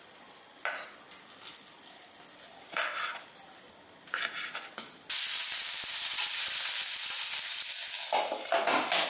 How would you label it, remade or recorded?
recorded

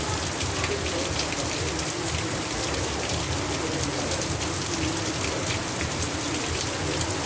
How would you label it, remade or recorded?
recorded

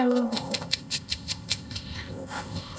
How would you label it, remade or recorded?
remade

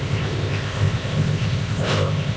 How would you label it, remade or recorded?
remade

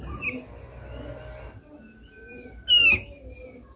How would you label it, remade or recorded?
recorded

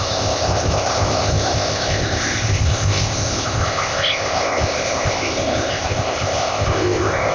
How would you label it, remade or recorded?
remade